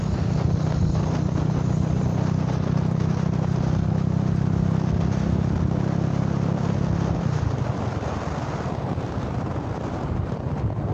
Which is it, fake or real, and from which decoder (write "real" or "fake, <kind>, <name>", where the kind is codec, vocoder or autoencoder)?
real